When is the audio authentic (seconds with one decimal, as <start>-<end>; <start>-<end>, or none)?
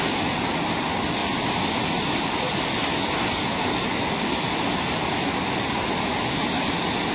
0.0-7.1